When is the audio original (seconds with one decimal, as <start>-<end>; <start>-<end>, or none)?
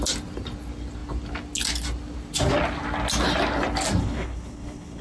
0.0-4.0